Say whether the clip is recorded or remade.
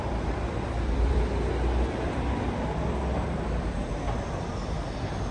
remade